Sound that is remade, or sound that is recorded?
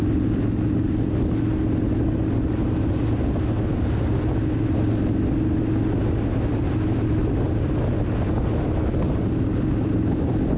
recorded